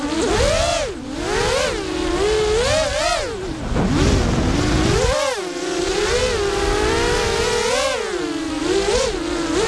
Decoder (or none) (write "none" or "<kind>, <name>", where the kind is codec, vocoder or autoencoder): none